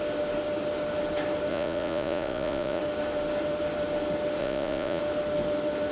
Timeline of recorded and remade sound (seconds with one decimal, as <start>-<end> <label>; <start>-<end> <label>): 0.0-1.5 recorded; 1.5-2.8 remade; 2.8-4.4 recorded; 4.4-5.0 remade; 5.0-5.9 recorded